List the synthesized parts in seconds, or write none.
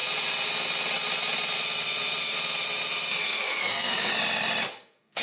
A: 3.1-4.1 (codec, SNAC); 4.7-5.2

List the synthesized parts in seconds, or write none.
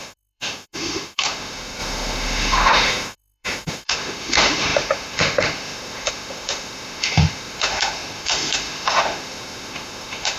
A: 0.0-10.4 (autoencoder, DAC-VAE)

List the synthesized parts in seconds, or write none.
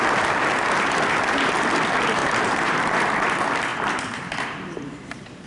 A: 2.2-3.1 (vocoder, BigVGAN v2); 3.7-4.3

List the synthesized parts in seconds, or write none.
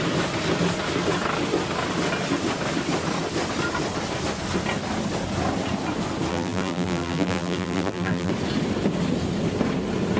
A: 6.3-8.3 (vocoder, BigVGAN v2)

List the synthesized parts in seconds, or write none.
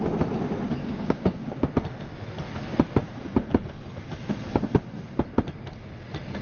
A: 0.8-1.7 (codec, DAC)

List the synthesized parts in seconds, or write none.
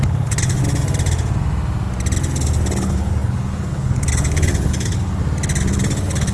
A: 0.0-0.6 (codec, HILCodec); 2.7-5.2; 5.7-6.3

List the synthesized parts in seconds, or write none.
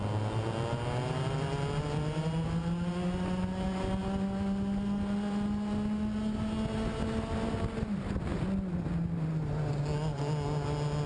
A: none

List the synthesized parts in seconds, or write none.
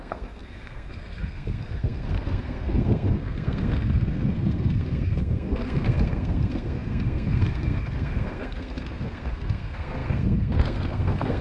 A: 0.0-11.4 (codec, SNAC)